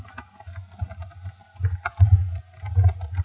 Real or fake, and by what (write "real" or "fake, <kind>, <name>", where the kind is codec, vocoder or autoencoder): real